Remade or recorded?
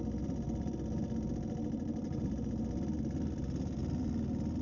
recorded